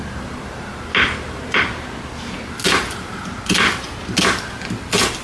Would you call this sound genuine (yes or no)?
yes